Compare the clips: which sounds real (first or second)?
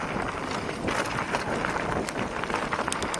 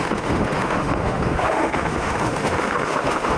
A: first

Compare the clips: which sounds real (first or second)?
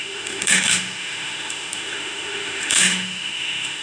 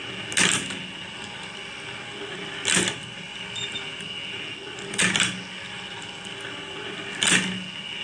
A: second